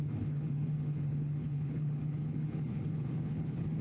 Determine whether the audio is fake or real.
fake